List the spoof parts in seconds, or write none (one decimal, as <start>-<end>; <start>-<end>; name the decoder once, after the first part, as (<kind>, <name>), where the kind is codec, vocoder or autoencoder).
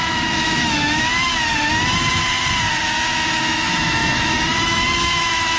0.0-1.3 (autoencoder, DAC-VAE); 2.8-5.6